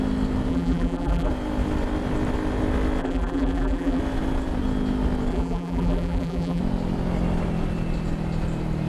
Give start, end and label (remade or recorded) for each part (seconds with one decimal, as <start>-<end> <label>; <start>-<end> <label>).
0.0-0.5 recorded; 0.5-1.3 remade; 1.3-3.0 recorded; 3.0-4.0 remade; 4.0-5.3 recorded; 5.3-6.6 remade; 6.6-8.9 recorded